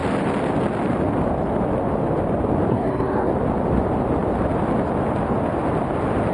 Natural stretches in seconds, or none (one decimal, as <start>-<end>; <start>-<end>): 0.0-2.7; 3.3-6.3